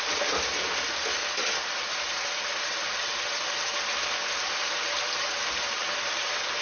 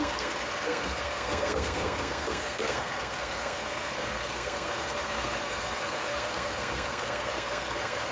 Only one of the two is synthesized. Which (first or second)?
second